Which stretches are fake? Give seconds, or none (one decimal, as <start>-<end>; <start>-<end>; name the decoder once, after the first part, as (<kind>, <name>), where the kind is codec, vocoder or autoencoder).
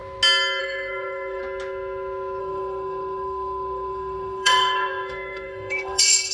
0.6-1.4 (codec, SNAC); 2.4-6.3